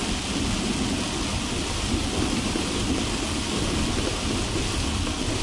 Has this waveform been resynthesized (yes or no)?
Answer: no